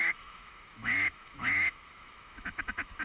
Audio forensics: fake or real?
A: fake